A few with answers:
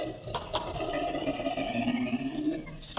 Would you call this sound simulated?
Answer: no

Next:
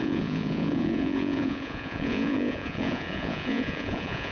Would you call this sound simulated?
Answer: yes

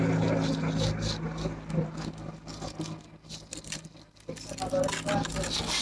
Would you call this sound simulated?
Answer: no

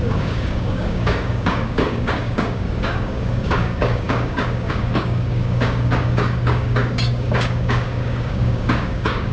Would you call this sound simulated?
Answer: yes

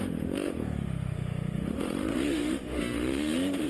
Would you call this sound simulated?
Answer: yes